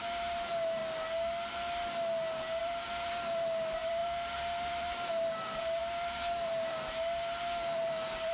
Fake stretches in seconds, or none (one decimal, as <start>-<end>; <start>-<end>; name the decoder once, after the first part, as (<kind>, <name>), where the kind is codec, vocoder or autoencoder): 0.0-0.8 (vocoder, BigVGAN v2); 2.6-8.3